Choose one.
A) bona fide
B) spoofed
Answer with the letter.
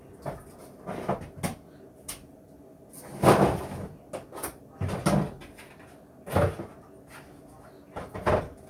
A